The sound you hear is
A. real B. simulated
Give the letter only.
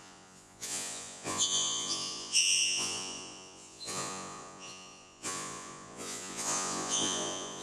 B